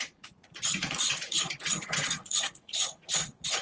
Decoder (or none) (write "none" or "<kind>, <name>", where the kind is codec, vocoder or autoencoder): vocoder, Vocos